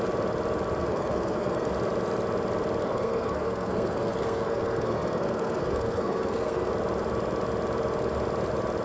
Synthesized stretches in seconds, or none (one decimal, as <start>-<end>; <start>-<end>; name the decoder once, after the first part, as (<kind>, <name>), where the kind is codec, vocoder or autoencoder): 0.8-1.7 (codec, SNAC); 2.8-6.7